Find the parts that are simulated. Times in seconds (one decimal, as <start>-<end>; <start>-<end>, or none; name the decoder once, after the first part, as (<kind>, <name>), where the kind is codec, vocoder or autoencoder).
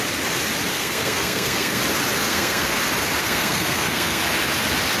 0.7-1.8 (codec, SNAC); 2.2-2.8; 3.2-4.2